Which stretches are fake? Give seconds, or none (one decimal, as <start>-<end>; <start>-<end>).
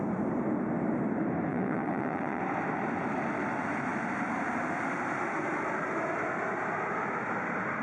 1.5-2.4